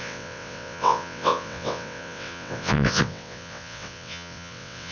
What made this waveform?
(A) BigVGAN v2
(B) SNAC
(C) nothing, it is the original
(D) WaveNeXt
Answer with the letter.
D